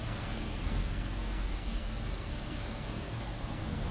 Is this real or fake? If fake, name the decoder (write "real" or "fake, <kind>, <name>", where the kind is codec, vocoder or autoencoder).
fake, codec, SNAC